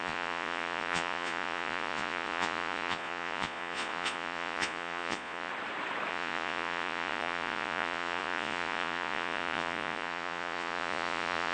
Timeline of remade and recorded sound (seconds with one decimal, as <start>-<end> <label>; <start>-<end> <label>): 0.0-5.5 remade; 5.5-6.1 recorded; 6.1-11.5 remade